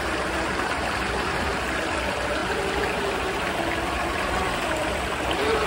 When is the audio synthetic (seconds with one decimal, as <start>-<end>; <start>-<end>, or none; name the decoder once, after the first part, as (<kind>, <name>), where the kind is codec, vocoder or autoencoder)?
none